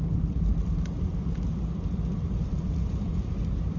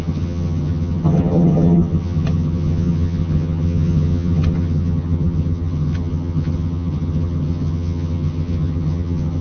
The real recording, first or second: first